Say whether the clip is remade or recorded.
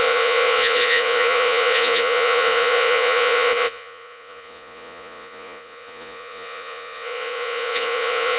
remade